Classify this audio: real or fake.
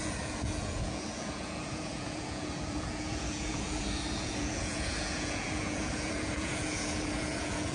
fake